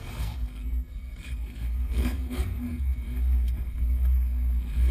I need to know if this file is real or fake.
fake